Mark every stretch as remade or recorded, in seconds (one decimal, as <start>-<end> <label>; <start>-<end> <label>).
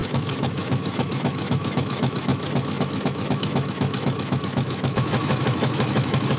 0.0-6.4 remade